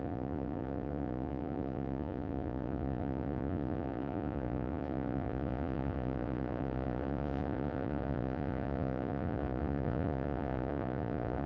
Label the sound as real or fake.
fake